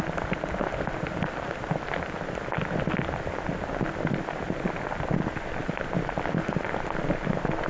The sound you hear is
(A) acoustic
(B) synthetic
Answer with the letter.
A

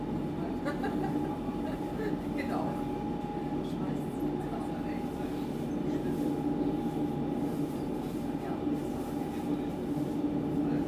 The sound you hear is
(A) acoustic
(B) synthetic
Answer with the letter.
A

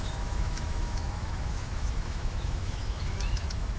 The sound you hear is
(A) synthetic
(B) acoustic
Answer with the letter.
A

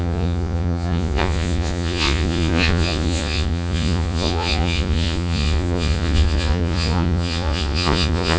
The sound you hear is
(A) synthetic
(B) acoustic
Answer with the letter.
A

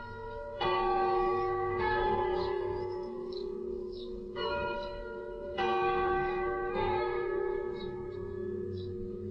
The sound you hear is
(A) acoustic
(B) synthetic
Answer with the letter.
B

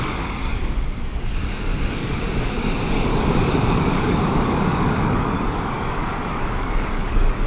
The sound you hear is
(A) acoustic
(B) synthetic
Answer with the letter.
B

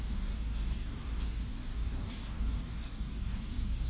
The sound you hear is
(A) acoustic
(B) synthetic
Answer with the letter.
B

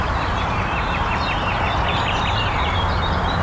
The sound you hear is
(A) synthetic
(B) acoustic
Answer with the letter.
A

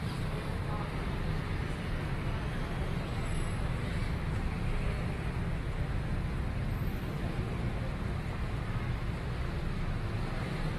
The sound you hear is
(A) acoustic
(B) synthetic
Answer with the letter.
A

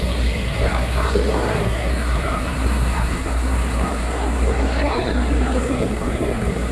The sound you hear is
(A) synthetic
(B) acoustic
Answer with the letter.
A